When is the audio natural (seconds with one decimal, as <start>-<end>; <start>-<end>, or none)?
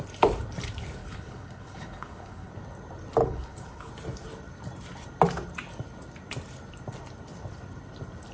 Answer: 0.0-1.0; 2.5-3.2; 3.9-8.3